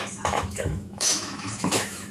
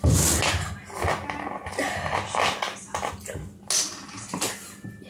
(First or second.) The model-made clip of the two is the first